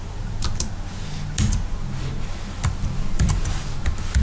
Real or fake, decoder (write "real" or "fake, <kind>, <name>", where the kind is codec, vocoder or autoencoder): real